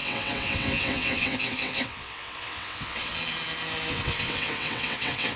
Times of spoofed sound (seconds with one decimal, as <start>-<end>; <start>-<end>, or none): 0.0-3.1; 3.9-5.4